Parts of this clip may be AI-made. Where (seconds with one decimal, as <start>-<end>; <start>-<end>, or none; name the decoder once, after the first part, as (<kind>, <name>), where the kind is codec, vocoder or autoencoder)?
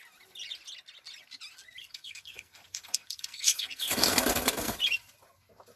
1.8-4.8 (codec, SNAC)